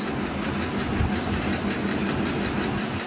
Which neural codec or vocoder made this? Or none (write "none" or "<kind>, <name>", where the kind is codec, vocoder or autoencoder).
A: none